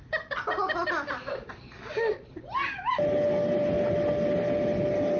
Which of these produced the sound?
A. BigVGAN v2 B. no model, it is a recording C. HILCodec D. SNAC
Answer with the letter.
B